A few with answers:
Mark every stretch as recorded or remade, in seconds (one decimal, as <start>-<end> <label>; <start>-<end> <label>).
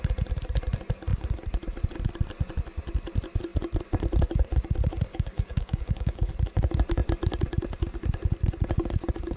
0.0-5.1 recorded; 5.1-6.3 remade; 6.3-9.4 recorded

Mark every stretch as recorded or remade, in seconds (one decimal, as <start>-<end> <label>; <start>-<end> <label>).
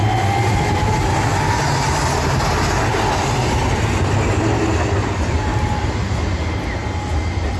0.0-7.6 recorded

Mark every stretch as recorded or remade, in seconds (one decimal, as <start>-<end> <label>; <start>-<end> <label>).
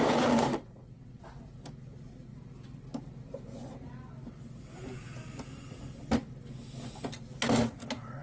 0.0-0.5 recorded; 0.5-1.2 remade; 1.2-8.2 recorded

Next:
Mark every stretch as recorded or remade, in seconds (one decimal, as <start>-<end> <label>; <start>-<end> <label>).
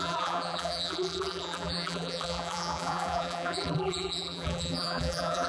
0.0-5.5 remade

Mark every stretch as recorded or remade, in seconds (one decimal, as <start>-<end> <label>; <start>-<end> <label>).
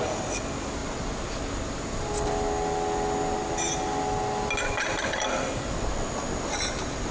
0.0-7.1 recorded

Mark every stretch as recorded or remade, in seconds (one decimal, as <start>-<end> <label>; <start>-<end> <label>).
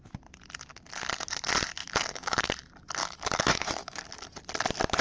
0.0-1.8 recorded; 1.8-2.5 remade; 2.5-3.0 recorded; 3.0-4.0 remade; 4.0-5.0 recorded